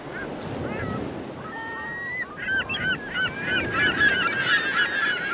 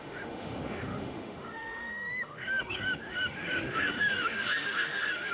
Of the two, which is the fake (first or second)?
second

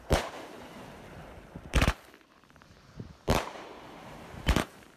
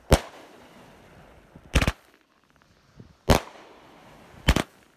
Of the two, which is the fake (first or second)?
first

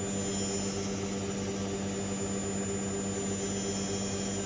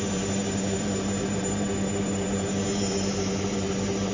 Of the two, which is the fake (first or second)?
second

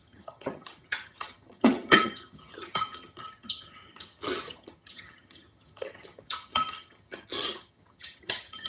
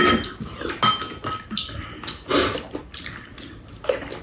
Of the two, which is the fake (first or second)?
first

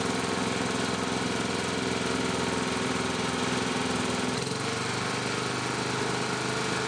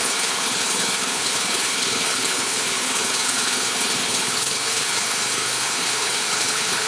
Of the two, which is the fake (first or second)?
second